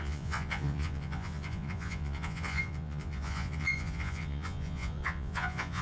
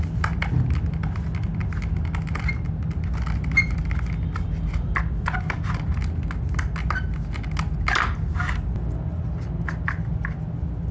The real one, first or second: second